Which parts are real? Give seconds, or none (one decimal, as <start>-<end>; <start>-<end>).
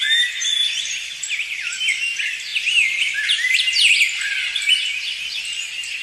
0.0-0.5; 1.8-2.5; 3.7-6.0